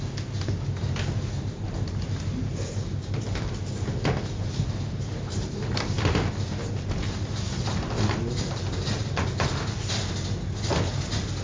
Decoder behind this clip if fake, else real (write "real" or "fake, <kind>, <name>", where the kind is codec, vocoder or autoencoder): real